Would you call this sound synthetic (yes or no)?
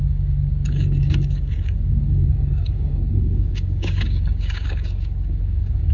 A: yes